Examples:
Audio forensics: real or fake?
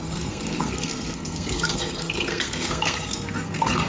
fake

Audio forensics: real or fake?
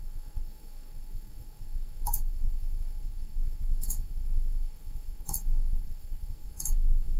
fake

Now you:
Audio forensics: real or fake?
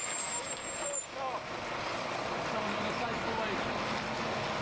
real